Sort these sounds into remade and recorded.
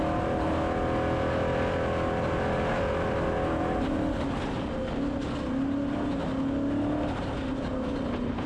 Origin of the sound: recorded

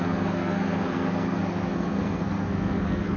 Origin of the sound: remade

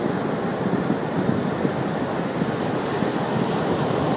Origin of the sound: recorded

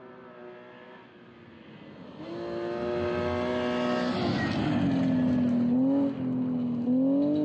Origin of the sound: recorded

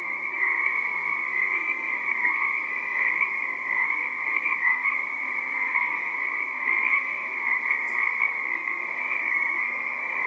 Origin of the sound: remade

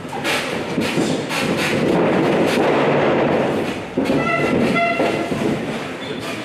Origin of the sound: recorded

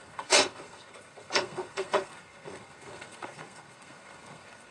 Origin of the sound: remade